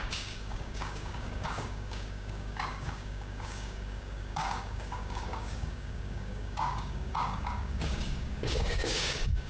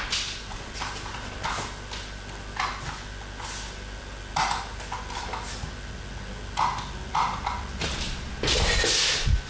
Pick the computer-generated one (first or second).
first